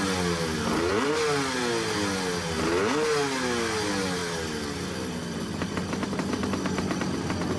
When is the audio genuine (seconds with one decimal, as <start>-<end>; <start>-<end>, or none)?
0.0-7.6